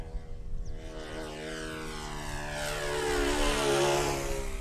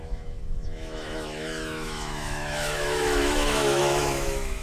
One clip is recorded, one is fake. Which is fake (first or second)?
second